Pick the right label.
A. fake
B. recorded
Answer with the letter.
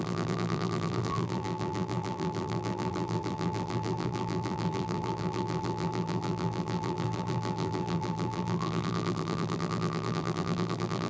A